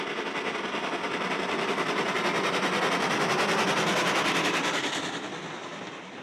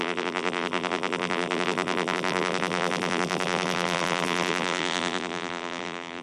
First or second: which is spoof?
second